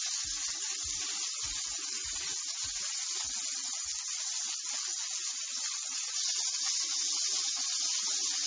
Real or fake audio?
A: real